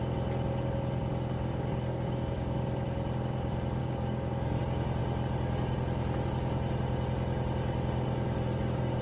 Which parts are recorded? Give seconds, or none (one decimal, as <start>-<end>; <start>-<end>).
0.0-1.9; 2.6-3.8; 4.6-9.0